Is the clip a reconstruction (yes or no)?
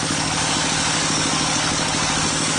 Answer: yes